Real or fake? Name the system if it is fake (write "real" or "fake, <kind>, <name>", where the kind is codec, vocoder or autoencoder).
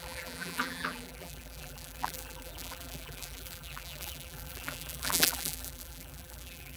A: fake, vocoder, BigVGAN v2